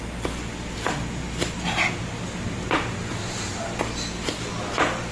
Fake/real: real